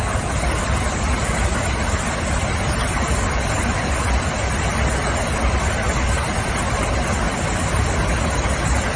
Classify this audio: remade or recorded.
recorded